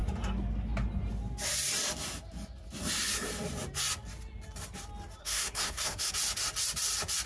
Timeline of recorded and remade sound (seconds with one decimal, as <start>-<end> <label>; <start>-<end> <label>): 0.0-5.2 recorded; 5.2-6.1 remade; 6.1-7.3 recorded